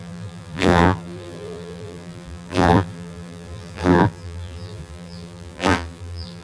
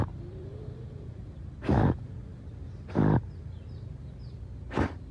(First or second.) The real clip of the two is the second